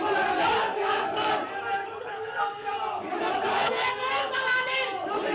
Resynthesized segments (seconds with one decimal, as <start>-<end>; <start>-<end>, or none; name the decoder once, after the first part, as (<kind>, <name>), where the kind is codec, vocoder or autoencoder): 0.6-1.3 (codec, SNAC); 2.1-2.7; 3.5-4.3